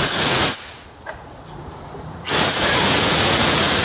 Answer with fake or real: fake